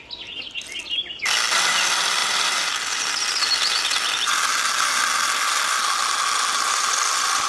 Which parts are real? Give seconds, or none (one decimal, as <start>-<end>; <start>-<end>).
0.0-7.5